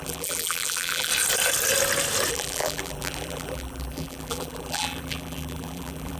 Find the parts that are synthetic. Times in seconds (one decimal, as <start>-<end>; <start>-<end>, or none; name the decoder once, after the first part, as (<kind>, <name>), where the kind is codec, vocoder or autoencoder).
0.0-1.1 (vocoder, BigVGAN v2); 2.3-6.2